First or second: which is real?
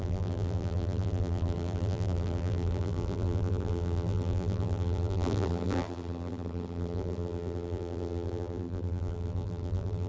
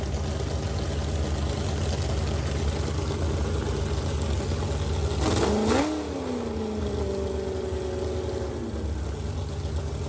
second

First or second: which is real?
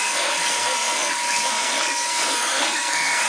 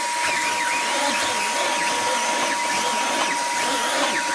second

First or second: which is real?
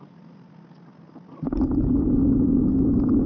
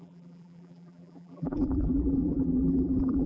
first